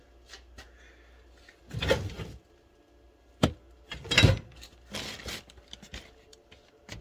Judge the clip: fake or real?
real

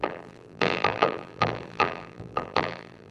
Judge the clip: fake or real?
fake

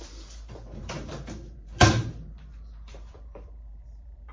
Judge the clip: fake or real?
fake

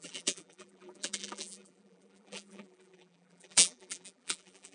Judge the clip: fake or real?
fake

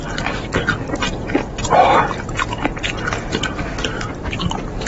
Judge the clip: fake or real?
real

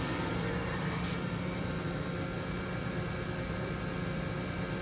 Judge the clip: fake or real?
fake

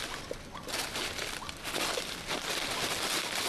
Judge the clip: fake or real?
real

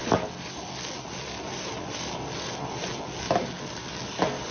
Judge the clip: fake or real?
real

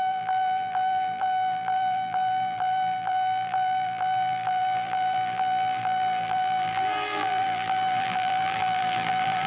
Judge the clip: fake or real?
fake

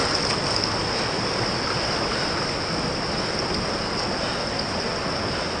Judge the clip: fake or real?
real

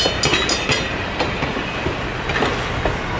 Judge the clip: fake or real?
real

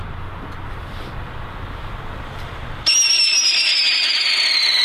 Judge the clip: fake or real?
real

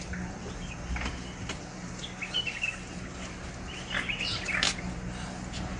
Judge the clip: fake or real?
real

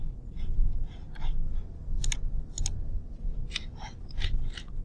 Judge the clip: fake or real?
real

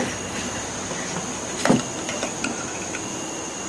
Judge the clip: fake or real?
real